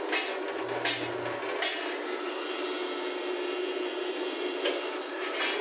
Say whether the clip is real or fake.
real